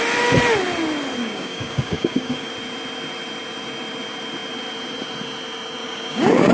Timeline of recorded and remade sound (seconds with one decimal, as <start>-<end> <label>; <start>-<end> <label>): 0.0-1.2 recorded; 1.2-2.5 remade; 2.5-5.8 recorded; 5.8-6.5 remade